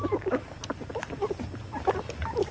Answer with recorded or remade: recorded